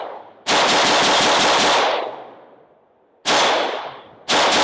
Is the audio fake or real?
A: real